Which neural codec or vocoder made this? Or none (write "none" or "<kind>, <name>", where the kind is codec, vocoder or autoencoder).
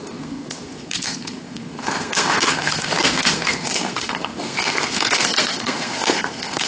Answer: codec, SNAC